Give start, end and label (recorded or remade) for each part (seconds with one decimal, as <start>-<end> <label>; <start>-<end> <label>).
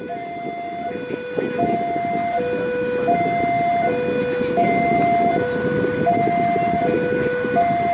0.0-7.9 recorded